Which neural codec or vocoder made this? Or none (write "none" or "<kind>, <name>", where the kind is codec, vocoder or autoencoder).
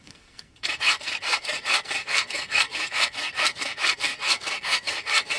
codec, SNAC